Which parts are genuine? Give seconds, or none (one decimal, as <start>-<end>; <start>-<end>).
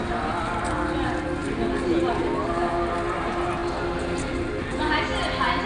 0.0-5.7